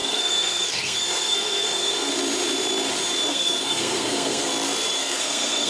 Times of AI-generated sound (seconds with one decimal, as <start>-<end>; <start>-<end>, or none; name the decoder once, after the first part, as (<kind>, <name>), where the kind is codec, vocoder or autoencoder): 0.0-2.1 (codec, SNAC); 3.3-4.5; 5.0-5.7